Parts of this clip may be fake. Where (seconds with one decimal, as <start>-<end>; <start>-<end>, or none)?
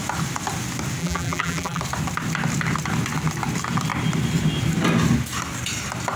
1.0-1.8